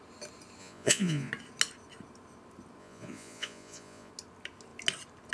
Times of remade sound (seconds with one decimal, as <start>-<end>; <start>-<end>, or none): 0.6-1.3; 2.8-4.1